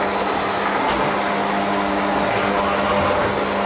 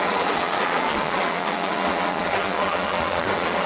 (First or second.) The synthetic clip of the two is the second